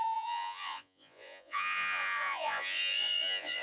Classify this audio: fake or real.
fake